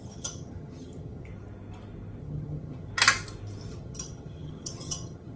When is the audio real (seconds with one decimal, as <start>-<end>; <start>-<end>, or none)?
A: 1.3-2.2; 2.9-3.7